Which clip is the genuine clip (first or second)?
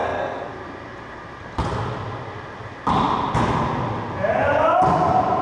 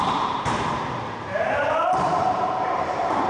first